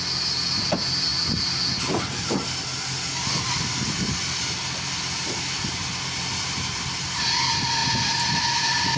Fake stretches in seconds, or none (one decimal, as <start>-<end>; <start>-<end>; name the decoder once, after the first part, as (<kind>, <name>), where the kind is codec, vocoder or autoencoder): none